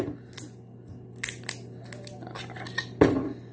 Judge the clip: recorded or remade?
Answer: recorded